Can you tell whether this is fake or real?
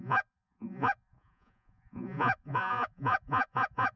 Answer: fake